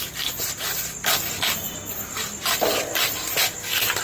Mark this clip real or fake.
real